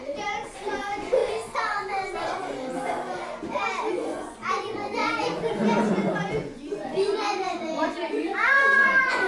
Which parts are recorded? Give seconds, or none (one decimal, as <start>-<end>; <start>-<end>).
1.2-3.9; 5.0-5.9